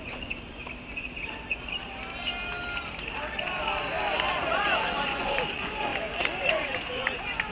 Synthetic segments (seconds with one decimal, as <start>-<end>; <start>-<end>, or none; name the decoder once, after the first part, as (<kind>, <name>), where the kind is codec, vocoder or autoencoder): 0.0-0.6 (vocoder, Vocos); 4.3-5.9; 6.4-7.5